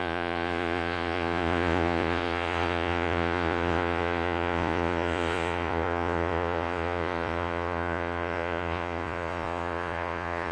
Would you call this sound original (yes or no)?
no